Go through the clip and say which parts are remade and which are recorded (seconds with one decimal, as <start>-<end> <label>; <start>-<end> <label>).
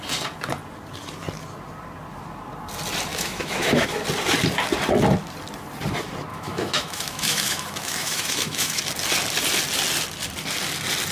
0.0-3.1 recorded; 3.1-4.0 remade; 4.0-6.3 recorded; 6.3-8.8 remade; 8.8-11.1 recorded